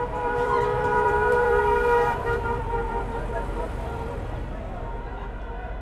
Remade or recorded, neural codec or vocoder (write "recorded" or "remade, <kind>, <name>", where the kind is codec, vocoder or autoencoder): remade, vocoder, BigVGAN v2